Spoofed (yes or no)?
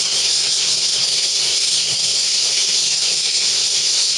yes